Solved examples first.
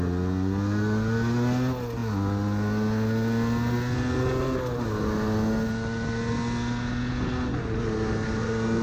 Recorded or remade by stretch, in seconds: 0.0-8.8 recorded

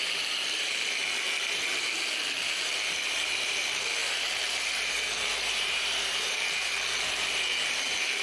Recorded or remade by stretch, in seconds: 0.0-8.2 remade

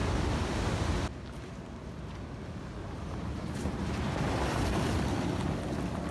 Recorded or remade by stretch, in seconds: 0.0-0.6 remade; 0.6-2.8 recorded; 2.8-4.9 remade; 4.9-6.1 recorded

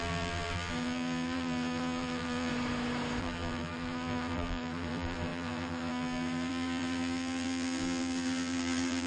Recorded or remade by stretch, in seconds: 0.0-2.5 remade; 2.5-3.2 recorded; 3.2-9.1 remade

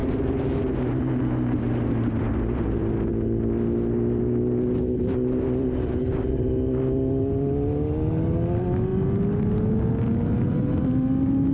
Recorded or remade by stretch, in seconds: 0.0-1.0 remade; 1.0-11.5 recorded

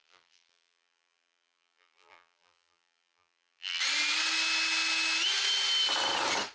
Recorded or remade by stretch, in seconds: 0.0-3.8 remade; 3.8-6.5 recorded

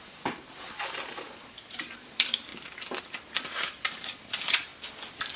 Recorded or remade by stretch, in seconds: 0.0-2.5 remade; 2.5-3.0 recorded; 3.0-4.7 remade; 4.7-5.4 recorded

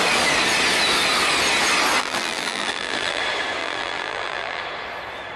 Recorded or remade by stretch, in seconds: 0.0-2.0 recorded; 2.0-3.2 remade; 3.2-3.6 recorded; 3.6-4.6 remade; 4.6-5.4 recorded